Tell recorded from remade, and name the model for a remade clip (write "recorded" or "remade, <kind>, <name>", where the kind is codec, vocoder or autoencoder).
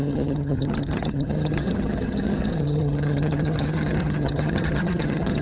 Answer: remade, vocoder, HiFi-GAN